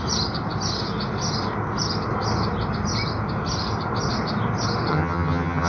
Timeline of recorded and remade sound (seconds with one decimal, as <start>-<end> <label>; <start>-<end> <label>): 0.0-4.9 recorded; 4.9-5.7 remade